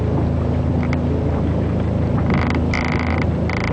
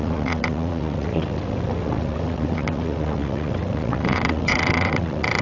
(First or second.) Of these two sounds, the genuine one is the first